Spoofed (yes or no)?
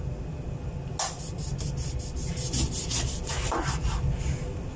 no